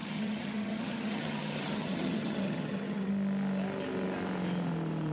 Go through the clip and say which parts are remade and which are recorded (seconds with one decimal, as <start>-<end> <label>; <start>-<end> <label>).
0.0-3.1 remade; 3.1-5.1 recorded